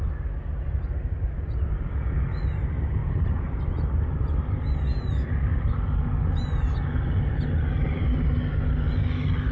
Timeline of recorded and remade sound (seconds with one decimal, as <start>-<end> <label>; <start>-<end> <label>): 0.0-3.0 recorded; 3.0-3.6 remade; 3.6-7.8 recorded; 7.8-8.3 remade; 8.3-9.5 recorded